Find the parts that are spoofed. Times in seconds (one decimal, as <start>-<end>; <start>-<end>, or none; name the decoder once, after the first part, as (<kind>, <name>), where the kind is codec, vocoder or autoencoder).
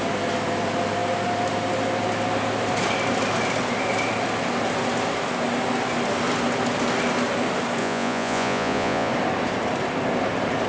7.8-9.1 (vocoder, Vocos)